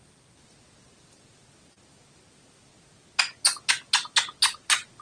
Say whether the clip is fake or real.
real